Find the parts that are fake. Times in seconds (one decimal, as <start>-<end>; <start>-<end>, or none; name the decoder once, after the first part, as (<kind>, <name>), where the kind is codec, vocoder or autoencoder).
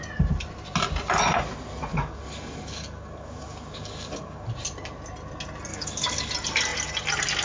1.9-4.5 (codec, DAC); 5.7-6.3